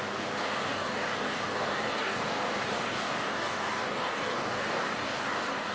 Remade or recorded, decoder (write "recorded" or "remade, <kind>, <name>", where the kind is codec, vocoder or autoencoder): remade, codec, DAC